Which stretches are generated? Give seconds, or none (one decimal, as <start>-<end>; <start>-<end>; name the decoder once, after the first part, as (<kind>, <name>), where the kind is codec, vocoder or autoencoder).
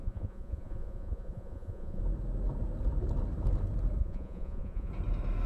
0.0-2.0 (vocoder, Vocos); 4.0-4.9